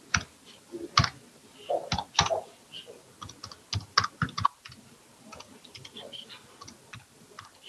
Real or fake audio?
real